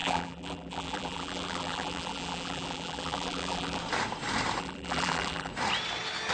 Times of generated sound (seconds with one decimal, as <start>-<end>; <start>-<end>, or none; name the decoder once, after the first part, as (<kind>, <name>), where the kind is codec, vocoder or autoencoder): 0.0-3.8 (vocoder, BigVGAN v2); 4.6-5.5